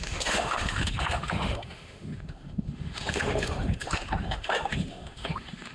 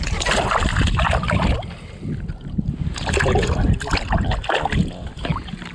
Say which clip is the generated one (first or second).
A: first